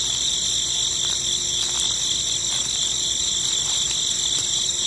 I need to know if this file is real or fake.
fake